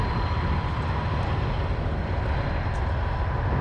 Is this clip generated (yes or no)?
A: no